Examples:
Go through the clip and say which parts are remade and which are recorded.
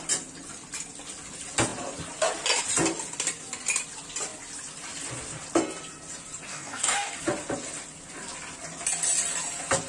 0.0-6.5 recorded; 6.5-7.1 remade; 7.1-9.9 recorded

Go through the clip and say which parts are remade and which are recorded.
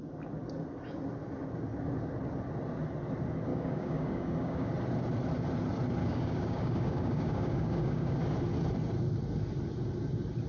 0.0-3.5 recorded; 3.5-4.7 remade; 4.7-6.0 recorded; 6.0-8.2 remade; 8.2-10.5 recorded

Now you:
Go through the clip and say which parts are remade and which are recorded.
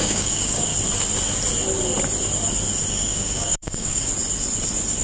0.0-0.7 remade; 0.7-2.9 recorded; 2.9-4.1 remade; 4.1-5.0 recorded